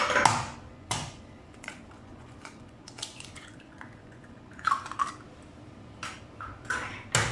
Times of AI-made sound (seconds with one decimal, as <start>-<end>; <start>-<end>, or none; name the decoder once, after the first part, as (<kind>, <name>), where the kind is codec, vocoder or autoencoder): 0.7-4.7 (vocoder, Vocos)